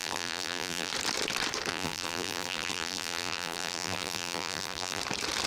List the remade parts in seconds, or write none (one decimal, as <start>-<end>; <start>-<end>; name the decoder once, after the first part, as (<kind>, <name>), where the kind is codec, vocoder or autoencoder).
0.0-0.9 (vocoder, BigVGAN v2); 1.7-5.0